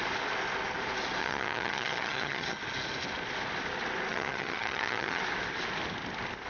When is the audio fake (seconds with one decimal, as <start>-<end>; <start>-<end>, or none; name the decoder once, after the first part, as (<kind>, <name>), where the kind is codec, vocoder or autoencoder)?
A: 1.2-2.6 (vocoder, HiFi-GAN); 4.1-5.2